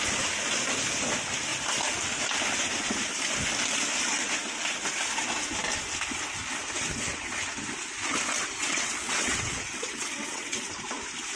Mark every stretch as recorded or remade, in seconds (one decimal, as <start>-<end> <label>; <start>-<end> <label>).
0.0-8.6 recorded; 8.6-10.7 remade; 10.7-11.4 recorded